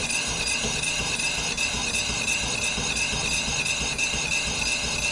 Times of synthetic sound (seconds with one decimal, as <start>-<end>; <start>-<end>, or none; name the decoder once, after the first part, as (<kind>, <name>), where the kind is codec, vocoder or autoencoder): 0.8-1.8 (vocoder, BigVGAN v2)